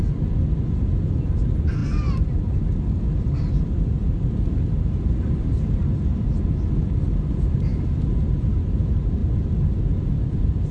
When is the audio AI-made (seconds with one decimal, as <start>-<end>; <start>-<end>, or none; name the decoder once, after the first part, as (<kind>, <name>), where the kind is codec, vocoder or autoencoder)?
none